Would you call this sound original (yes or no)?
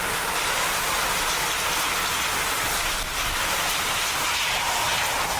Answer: yes